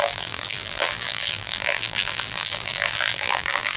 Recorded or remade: remade